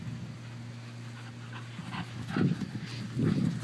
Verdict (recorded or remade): recorded